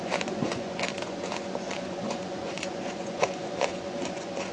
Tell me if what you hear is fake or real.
fake